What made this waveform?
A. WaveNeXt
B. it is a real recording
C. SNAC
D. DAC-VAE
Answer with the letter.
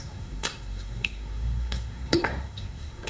C